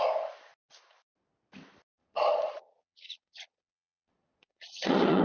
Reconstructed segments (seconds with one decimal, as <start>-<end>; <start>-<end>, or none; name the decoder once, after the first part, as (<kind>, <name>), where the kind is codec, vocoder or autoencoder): 2.0-5.2 (vocoder, Vocos)